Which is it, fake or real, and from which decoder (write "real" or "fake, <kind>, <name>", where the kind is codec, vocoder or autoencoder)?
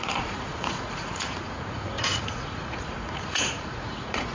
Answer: fake, vocoder, Vocos